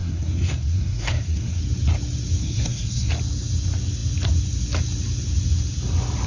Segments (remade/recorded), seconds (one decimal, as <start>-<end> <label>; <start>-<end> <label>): 0.0-1.6 remade; 1.6-2.4 recorded; 2.4-3.1 remade; 3.1-6.3 recorded